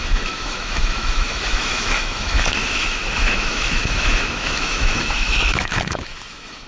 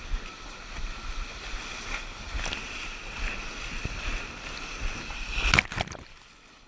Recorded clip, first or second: second